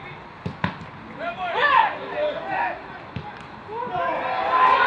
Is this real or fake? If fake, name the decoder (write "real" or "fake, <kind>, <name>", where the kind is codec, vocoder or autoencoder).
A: real